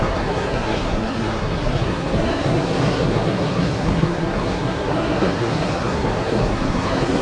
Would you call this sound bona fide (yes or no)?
no